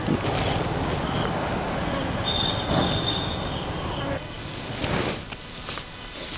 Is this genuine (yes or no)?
yes